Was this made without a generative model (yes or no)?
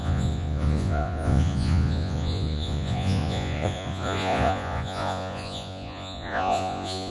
no